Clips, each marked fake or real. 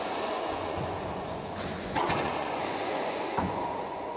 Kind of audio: fake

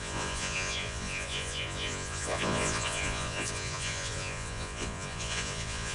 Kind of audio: fake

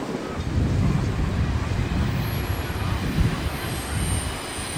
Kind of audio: real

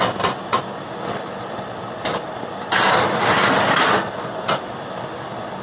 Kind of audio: real